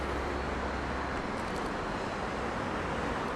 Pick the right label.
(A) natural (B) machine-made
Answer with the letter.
A